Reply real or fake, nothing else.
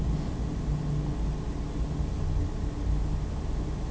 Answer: real